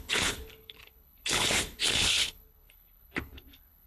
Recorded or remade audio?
remade